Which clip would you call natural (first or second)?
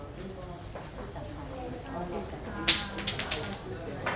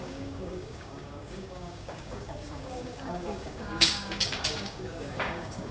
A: first